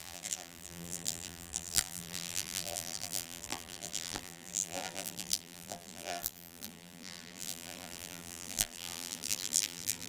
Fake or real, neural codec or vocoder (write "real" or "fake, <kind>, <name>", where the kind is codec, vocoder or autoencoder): fake, vocoder, BigVGAN v2